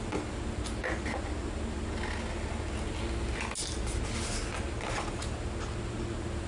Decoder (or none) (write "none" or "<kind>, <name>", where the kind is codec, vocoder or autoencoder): none